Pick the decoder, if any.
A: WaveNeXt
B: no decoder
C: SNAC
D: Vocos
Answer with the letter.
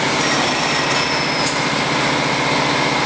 B